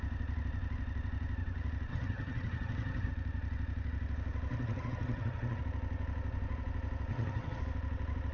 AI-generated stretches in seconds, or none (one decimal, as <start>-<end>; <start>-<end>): 1.9-3.1; 4.5-5.6; 7.1-7.6

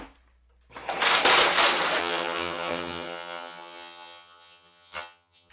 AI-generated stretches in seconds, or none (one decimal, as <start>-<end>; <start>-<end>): 2.0-5.5